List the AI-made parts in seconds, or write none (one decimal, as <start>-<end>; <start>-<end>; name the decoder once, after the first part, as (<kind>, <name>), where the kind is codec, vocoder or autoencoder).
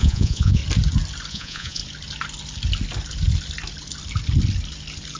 0.0-0.6 (vocoder, Vocos); 1.3-1.8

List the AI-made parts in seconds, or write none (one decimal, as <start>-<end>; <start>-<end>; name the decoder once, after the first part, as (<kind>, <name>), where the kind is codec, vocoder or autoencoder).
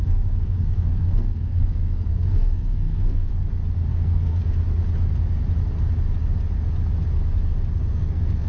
0.0-3.3 (codec, SNAC); 3.9-4.4; 7.9-8.5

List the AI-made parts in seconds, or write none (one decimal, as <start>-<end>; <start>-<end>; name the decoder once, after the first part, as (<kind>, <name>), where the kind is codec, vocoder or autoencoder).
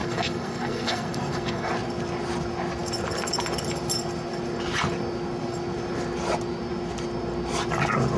0.0-1.7 (codec, SNAC)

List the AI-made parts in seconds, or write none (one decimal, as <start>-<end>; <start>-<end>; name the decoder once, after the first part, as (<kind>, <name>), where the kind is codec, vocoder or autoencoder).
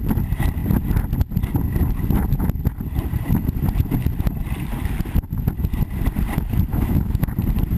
6.7-7.3 (autoencoder, DAC-VAE)